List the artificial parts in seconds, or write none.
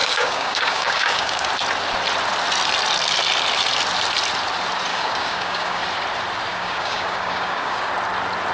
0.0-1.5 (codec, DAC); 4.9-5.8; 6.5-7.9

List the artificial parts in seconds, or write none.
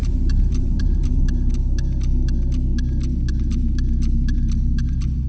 0.0-1.2 (vocoder, BigVGAN v2)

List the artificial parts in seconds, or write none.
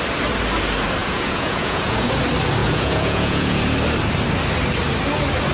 1.0-2.1 (vocoder, Vocos); 2.6-3.6